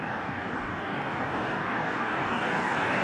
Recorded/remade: remade